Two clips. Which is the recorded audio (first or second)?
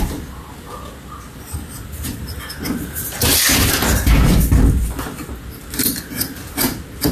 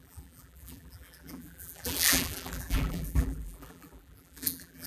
first